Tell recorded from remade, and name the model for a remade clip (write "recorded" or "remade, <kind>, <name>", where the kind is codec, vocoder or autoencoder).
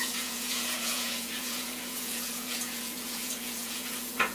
remade, vocoder, Vocos